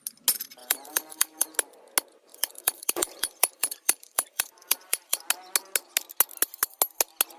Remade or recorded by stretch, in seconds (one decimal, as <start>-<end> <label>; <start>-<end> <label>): 0.0-0.6 recorded; 0.6-1.6 remade; 1.6-2.3 recorded; 2.3-5.2 remade; 5.2-7.4 recorded